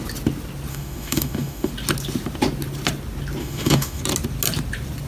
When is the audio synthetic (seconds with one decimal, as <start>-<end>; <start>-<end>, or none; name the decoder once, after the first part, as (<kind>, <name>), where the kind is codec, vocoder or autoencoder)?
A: 0.7-1.7 (autoencoder, DAC-VAE); 3.4-4.0